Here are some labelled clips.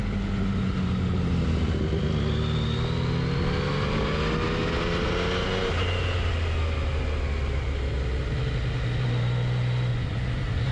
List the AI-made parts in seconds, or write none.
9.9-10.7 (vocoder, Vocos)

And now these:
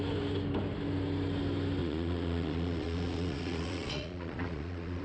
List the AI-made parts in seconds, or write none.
1.8-5.0 (vocoder, Vocos)

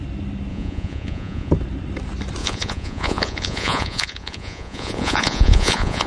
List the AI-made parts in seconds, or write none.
0.5-1.5 (vocoder, Vocos); 2.4-6.1

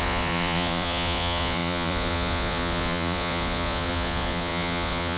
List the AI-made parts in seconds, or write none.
0.0-5.2 (vocoder, Vocos)

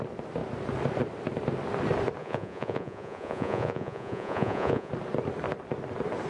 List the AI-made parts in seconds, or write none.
2.2-4.9 (vocoder, Vocos)